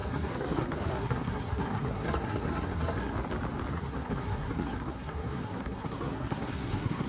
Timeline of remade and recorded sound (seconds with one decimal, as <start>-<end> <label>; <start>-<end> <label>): 0.0-3.1 remade; 3.1-3.7 recorded; 3.7-7.1 remade